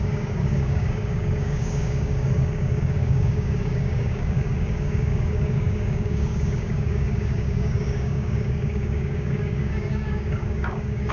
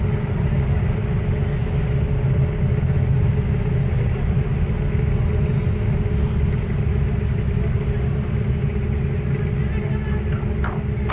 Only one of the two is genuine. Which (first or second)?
second